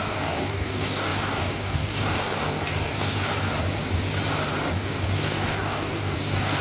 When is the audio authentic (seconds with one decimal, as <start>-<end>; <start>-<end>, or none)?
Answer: 3.3-4.7